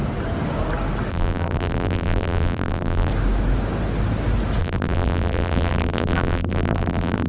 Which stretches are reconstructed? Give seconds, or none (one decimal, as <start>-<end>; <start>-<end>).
1.1-3.1; 4.6-7.3